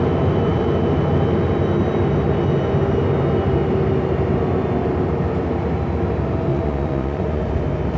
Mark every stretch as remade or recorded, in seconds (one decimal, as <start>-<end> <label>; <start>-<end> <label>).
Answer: 0.0-6.5 recorded; 6.5-7.4 remade; 7.4-8.0 recorded